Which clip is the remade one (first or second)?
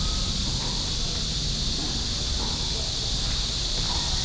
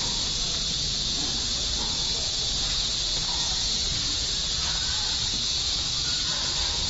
second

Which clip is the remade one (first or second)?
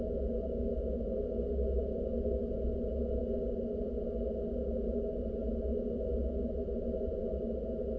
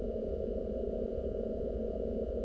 second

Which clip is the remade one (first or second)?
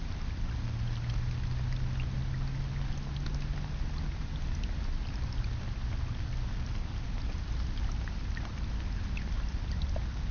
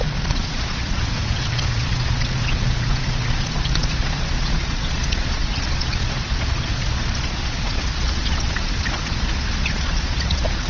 second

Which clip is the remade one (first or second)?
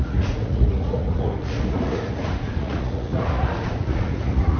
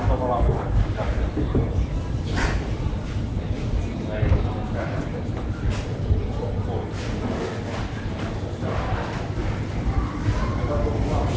first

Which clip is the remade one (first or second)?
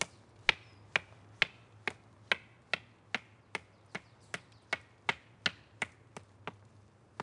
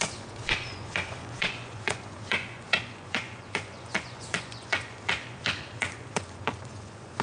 second